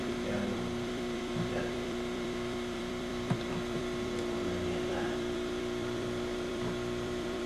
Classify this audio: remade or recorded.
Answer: remade